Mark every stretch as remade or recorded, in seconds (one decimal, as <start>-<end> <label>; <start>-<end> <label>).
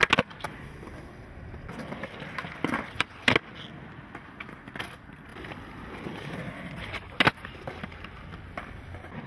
0.0-9.3 recorded